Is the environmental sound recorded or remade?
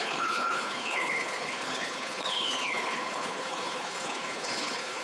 remade